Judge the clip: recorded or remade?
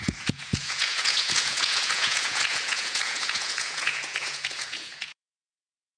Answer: remade